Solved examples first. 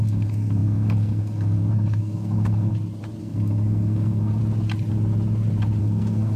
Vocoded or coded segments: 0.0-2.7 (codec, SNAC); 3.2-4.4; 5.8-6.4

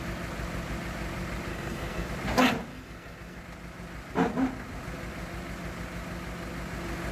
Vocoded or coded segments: 1.5-2.1 (codec, SNAC); 2.7-3.4

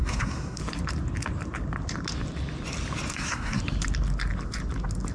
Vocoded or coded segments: 0.0-0.6 (codec, SNAC); 3.1-3.6

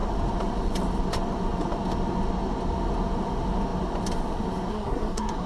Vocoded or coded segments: 4.7-5.5 (codec, SNAC)

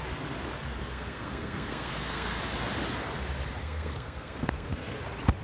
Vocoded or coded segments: 0.8-2.4 (codec, SNAC); 3.6-5.0

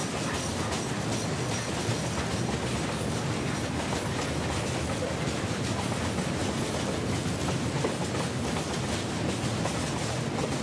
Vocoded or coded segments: none